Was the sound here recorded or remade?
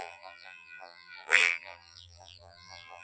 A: remade